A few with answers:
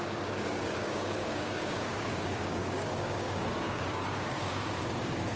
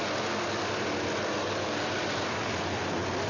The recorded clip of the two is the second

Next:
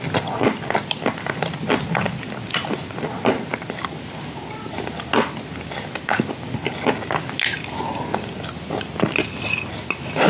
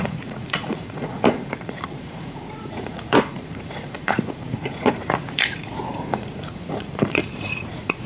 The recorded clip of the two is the first